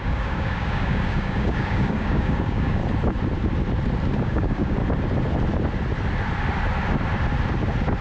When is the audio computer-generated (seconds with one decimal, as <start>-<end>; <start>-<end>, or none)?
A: 0.0-2.8; 4.2-4.8

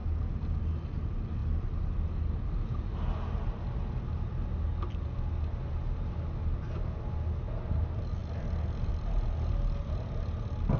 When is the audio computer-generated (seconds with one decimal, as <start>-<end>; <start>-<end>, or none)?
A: none

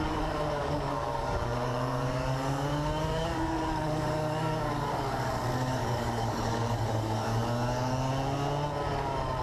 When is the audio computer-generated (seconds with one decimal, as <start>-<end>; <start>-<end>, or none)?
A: 0.0-8.1; 8.9-9.4

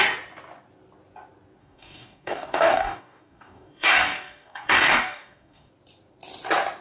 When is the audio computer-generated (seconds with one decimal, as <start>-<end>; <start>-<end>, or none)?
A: 1.6-5.7